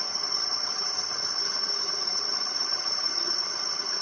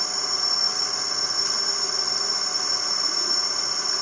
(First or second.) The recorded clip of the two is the second